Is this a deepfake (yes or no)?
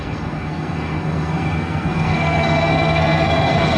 yes